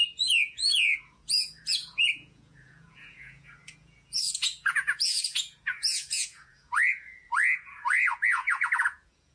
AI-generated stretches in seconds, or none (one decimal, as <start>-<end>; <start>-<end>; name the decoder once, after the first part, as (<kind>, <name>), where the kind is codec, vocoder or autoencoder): 0.0-9.3 (vocoder, Vocos)